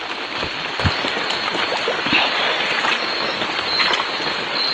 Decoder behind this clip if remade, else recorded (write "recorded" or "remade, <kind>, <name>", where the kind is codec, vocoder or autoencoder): remade, vocoder, BigVGAN v2